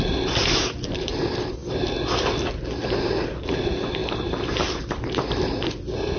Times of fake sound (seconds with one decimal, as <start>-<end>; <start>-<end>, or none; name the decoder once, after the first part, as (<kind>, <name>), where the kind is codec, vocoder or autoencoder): 0.4-1.1 (vocoder, BigVGAN v2); 4.0-5.7